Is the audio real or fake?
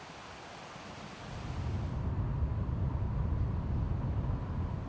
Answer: real